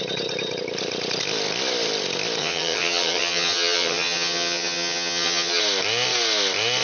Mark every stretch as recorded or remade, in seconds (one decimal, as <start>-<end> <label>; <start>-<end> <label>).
0.0-2.4 recorded; 2.4-5.6 remade; 5.6-6.8 recorded